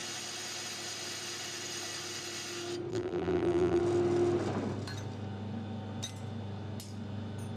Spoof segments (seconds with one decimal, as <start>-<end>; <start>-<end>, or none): 2.9-3.8